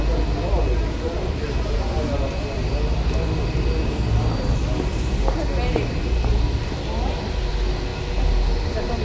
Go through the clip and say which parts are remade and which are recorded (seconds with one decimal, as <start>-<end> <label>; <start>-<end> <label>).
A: 0.0-9.0 recorded